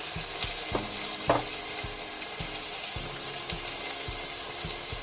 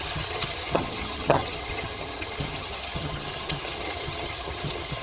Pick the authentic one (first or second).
first